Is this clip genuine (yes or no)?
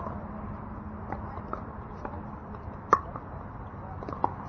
yes